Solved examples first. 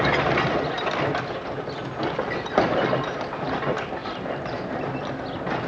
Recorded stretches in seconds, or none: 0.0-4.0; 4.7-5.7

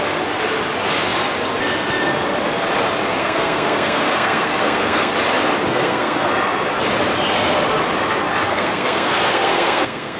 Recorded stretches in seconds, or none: 0.0-3.2; 5.1-5.7; 6.3-8.5

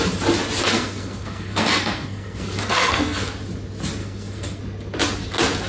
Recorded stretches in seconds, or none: 0.0-0.6; 3.3-4.0; 4.6-5.7

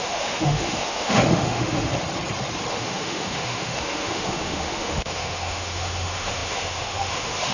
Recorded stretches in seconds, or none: 1.9-2.7

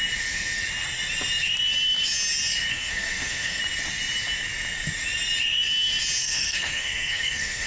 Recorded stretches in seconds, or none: 0.0-2.7; 3.6-6.2

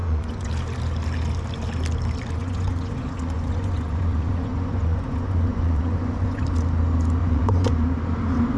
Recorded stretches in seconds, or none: 0.5-2.4; 6.4-7.2; 7.7-8.6

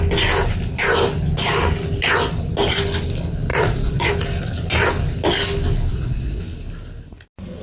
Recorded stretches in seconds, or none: 0.0-3.5; 4.1-5.9; 6.4-7.6

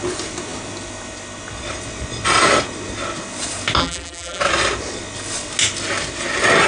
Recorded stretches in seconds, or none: 0.0-3.8; 4.4-6.7